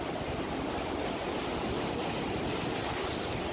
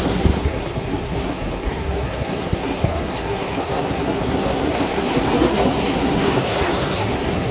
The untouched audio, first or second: first